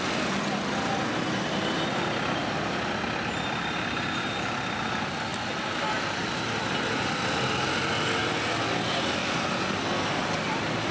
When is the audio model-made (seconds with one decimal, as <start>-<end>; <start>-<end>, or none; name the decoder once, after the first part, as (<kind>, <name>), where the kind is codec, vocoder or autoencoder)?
none